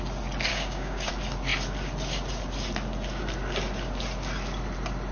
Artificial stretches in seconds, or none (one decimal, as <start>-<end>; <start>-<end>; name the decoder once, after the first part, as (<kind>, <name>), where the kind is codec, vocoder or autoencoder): 0.5-1.1 (codec, DAC)